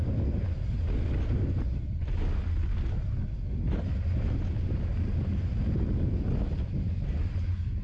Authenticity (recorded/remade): recorded